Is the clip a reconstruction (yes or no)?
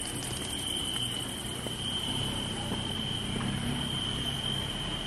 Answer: no